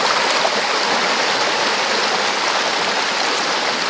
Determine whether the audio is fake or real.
real